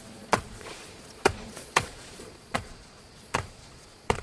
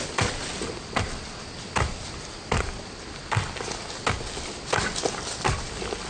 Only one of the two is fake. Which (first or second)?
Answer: first